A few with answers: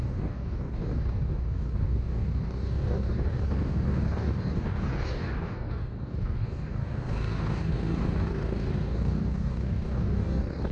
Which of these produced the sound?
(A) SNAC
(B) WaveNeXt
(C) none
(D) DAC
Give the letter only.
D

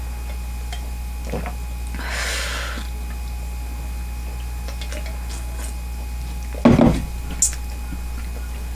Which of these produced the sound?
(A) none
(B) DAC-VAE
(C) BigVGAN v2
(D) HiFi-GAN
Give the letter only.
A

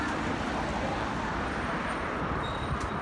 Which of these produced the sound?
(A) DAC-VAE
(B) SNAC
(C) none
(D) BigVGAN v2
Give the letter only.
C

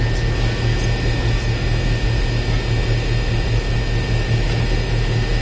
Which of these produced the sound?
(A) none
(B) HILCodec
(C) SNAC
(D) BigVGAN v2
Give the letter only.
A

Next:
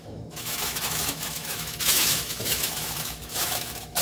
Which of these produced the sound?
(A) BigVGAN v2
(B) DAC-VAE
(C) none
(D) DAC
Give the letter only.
B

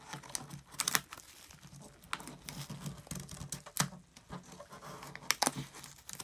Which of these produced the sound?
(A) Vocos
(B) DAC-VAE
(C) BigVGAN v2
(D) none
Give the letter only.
D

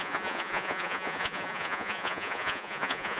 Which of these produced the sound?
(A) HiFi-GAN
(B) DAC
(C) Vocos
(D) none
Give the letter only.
C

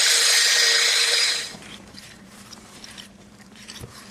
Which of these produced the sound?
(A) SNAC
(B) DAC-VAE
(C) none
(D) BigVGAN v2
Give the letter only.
D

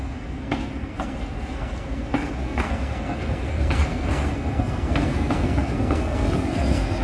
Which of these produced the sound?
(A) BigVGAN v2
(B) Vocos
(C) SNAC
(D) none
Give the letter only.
C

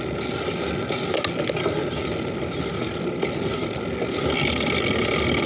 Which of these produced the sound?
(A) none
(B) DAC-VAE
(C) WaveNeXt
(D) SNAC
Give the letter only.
A